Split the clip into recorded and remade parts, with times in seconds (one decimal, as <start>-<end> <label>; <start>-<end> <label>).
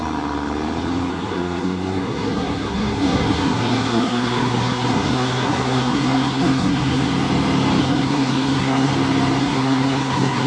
0.0-1.1 recorded; 1.1-7.1 remade; 7.1-7.8 recorded; 7.8-8.9 remade; 8.9-9.4 recorded; 9.4-10.5 remade